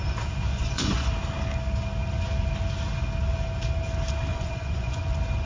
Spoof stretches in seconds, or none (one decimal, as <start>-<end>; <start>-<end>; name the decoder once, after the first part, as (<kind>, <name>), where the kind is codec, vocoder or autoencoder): 0.5-1.1 (vocoder, Vocos); 4.3-5.0